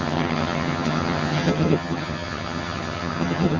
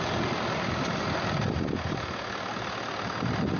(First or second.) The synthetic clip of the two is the first